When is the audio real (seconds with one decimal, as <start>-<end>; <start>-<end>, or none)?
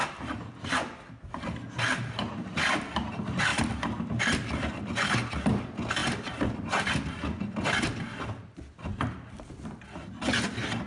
0.0-10.9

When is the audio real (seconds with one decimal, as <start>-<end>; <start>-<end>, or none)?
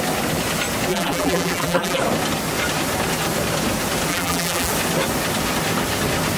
0.0-0.9; 2.0-4.1; 4.7-6.4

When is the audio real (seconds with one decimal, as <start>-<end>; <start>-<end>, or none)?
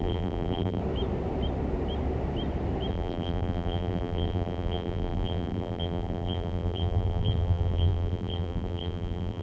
0.8-2.9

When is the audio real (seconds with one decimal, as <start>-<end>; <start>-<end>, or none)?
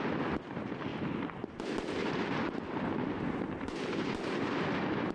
0.0-0.9; 1.6-2.0; 4.5-5.1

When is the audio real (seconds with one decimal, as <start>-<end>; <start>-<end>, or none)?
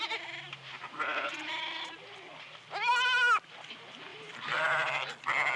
0.0-4.1; 5.1-5.6